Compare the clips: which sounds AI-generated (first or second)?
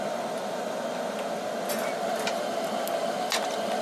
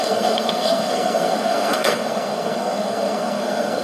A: second